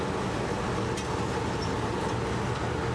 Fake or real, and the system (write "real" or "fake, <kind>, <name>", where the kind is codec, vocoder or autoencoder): real